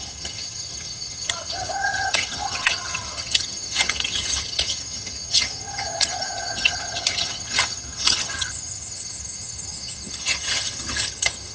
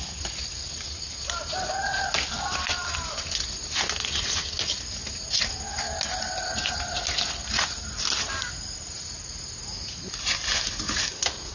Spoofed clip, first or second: first